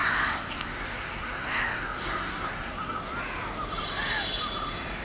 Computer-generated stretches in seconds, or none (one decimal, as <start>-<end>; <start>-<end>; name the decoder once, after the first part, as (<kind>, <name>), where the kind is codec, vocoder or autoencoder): 0.0-3.0 (codec, SNAC)